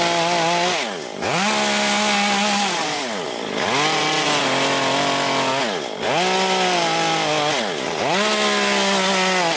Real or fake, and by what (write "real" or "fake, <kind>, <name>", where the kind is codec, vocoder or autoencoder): real